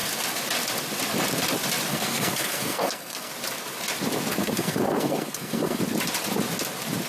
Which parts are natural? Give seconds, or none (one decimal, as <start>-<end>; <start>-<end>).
0.0-1.9; 3.3-4.3; 5.8-7.1